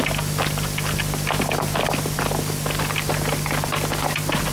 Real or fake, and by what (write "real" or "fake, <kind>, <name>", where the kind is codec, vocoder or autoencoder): real